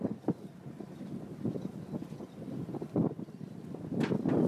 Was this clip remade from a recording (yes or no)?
no